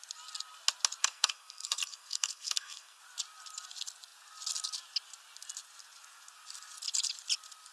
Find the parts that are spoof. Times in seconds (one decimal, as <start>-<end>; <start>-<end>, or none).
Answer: 1.0-3.0